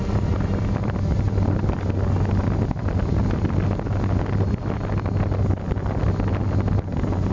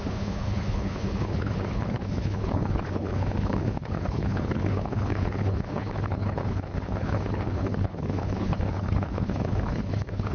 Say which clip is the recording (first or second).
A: first